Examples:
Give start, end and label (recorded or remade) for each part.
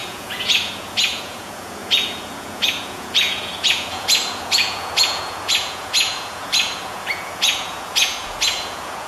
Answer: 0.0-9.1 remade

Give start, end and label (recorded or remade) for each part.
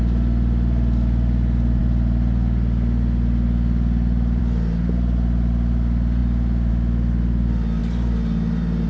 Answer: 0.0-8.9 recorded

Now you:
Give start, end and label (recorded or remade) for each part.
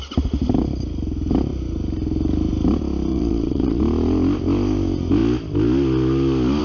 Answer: 0.0-3.1 recorded; 3.1-3.8 remade; 3.8-6.6 recorded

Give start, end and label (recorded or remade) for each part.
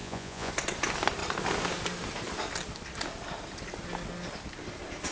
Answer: 0.0-0.5 remade; 0.5-5.1 recorded